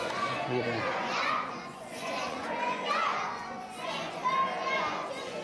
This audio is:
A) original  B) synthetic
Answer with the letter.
B